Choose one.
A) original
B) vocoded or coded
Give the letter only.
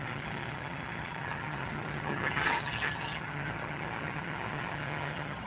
B